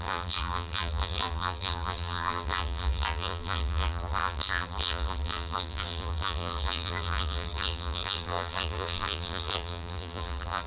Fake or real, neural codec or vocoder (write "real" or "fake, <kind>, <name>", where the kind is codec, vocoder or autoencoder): fake, vocoder, BigVGAN v2